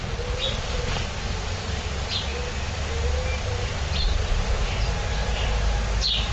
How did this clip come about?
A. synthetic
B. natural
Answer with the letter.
B